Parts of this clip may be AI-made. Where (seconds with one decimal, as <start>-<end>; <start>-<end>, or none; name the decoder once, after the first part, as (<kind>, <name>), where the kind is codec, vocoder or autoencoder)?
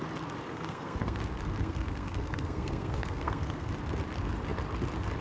0.5-1.2 (codec, SNAC); 1.6-3.7